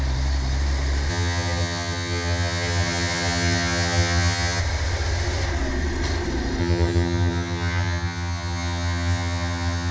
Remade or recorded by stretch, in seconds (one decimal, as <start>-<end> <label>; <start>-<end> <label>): 0.0-1.1 recorded; 1.1-4.6 remade; 4.6-6.6 recorded; 6.6-9.9 remade